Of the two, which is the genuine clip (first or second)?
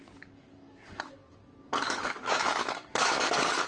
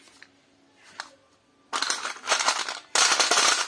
second